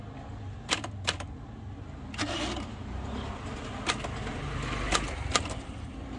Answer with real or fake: real